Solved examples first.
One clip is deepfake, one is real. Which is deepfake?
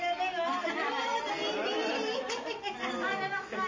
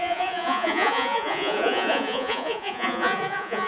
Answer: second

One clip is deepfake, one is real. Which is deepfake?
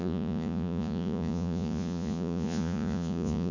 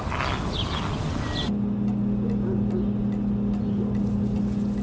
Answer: first